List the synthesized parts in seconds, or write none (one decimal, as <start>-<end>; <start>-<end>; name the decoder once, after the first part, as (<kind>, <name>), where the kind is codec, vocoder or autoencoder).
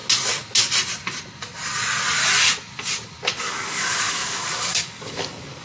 3.4-5.6 (codec, DAC)